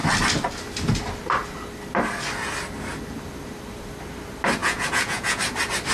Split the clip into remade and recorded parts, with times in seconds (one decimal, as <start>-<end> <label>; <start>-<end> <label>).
0.0-4.6 recorded; 4.6-5.4 remade; 5.4-5.9 recorded